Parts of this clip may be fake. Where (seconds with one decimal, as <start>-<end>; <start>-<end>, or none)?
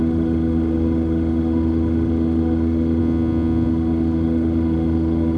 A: 0.0-3.0; 3.7-5.4